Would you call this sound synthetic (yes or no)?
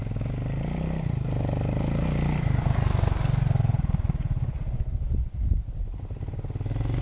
no